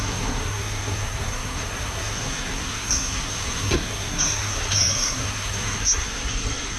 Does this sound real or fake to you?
fake